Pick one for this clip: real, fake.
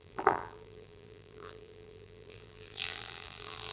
fake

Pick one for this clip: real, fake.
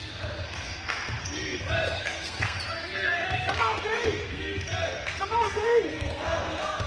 fake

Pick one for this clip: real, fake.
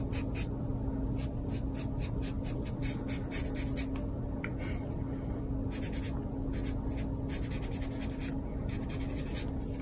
real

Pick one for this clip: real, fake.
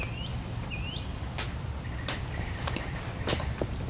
real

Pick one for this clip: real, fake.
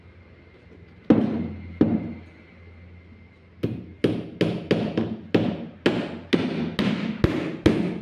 real